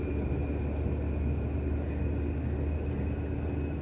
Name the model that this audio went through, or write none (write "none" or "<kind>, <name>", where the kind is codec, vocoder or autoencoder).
none